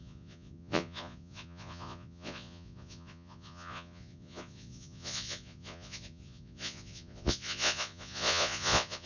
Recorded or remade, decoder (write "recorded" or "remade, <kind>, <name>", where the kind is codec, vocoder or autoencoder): remade, vocoder, Vocos